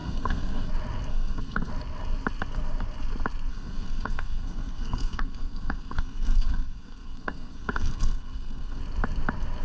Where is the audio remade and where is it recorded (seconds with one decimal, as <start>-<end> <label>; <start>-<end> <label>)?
0.0-0.7 remade; 0.7-1.1 recorded; 1.1-1.7 remade; 1.7-3.5 recorded; 3.5-8.8 remade; 8.8-9.6 recorded